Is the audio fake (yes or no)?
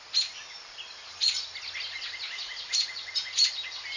no